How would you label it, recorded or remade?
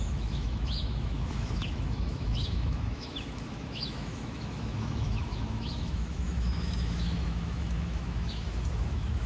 remade